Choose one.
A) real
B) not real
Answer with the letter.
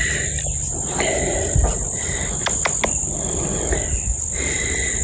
A